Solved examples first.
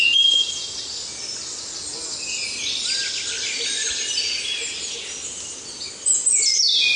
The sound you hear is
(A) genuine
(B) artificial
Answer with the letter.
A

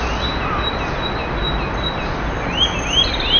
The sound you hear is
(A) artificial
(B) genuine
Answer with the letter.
B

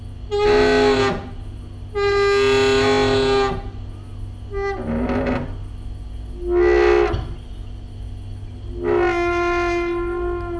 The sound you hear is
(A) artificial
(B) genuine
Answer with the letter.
B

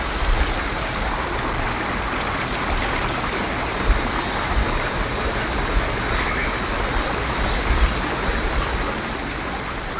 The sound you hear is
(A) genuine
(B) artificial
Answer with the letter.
A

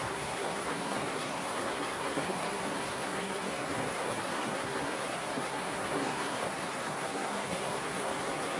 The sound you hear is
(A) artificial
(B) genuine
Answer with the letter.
A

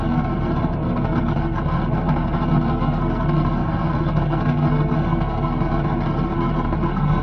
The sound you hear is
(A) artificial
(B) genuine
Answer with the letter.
A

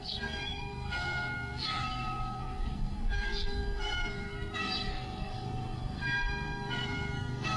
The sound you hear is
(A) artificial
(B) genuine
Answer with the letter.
A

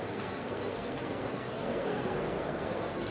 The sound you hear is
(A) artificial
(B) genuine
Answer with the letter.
A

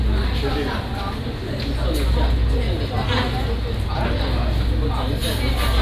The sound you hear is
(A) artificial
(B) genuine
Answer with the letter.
B